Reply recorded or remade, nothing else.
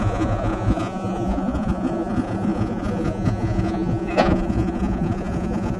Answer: remade